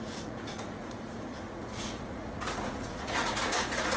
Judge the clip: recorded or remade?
remade